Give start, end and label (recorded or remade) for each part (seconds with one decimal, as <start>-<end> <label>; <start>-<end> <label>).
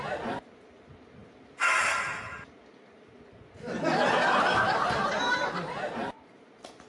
0.0-6.9 recorded